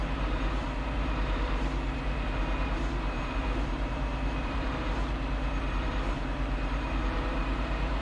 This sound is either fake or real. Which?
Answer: fake